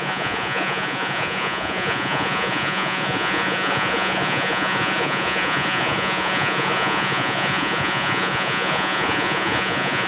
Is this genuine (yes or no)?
no